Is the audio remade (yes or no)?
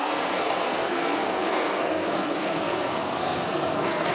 yes